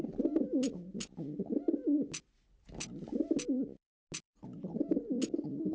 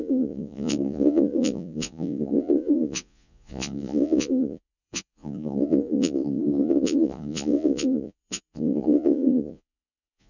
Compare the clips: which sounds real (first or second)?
first